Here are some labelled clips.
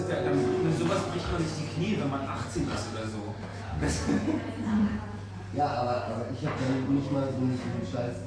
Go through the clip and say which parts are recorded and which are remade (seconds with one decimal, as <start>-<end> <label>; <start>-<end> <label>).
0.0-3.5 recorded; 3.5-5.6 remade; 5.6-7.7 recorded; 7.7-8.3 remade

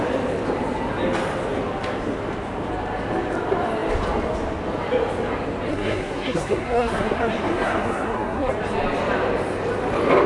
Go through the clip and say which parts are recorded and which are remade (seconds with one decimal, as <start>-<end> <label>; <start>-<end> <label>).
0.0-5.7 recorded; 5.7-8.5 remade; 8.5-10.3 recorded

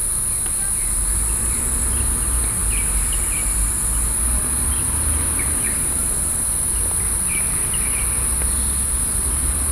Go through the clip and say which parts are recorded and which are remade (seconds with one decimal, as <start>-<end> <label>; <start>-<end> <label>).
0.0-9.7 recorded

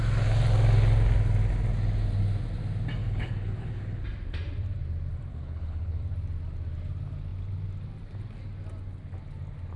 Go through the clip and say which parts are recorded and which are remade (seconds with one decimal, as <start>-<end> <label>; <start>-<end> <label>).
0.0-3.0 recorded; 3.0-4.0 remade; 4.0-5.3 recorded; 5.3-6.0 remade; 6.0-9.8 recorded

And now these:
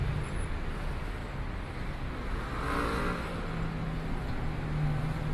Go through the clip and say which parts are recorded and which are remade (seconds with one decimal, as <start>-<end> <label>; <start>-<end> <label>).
0.0-0.5 remade; 0.5-5.3 recorded

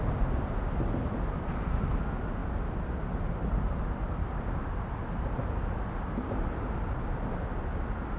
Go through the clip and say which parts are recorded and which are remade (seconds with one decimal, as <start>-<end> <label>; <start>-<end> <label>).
0.0-8.2 recorded

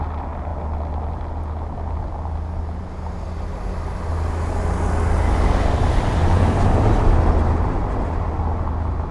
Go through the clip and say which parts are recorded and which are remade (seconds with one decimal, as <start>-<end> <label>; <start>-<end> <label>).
0.0-9.1 recorded

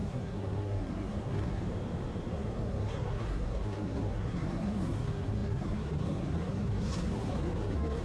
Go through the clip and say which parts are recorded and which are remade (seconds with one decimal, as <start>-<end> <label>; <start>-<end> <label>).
0.0-1.6 remade; 1.6-2.3 recorded; 2.3-8.0 remade